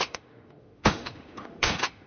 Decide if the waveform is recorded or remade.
remade